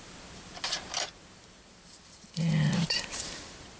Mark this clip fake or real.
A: fake